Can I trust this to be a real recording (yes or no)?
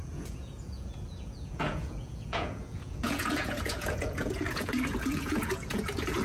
no